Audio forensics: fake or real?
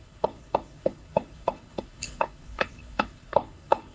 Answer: fake